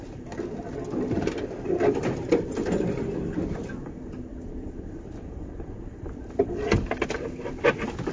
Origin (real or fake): fake